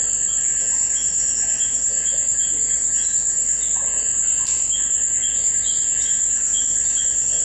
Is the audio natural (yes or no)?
yes